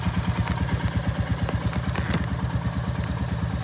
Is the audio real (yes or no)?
yes